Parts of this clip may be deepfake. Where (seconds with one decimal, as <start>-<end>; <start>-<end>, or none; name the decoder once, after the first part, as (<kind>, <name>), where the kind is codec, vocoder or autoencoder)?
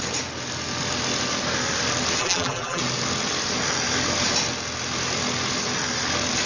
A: 2.2-2.8 (vocoder, BigVGAN v2)